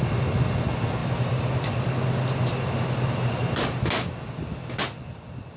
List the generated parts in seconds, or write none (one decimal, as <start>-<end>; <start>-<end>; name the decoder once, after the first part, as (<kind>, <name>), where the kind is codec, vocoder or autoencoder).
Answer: 1.0-1.9 (vocoder, BigVGAN v2)

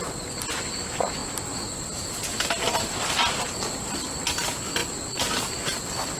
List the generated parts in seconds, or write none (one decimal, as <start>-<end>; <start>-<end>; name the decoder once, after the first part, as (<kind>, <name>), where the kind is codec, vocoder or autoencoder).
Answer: none

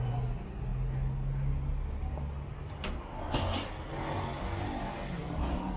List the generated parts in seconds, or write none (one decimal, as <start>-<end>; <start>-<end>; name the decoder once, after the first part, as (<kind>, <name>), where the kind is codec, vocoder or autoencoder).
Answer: none

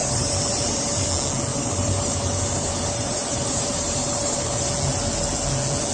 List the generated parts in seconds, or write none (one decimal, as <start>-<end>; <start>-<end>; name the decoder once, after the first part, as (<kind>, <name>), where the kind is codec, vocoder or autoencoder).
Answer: 0.0-1.1 (vocoder, BigVGAN v2); 1.5-4.7

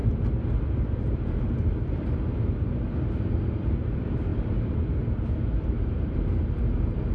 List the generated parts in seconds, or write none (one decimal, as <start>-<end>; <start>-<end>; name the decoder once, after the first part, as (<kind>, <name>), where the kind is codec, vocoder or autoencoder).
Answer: 1.0-7.1 (vocoder, BigVGAN v2)

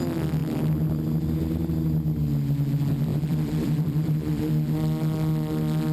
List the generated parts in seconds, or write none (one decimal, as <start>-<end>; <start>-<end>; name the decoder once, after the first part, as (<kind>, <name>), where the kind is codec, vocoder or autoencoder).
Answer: 3.1-4.4 (vocoder, BigVGAN v2)

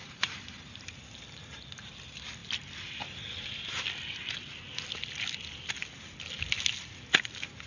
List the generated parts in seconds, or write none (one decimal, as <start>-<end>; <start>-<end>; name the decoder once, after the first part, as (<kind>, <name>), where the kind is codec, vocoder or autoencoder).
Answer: 0.0-1.1 (vocoder, BigVGAN v2)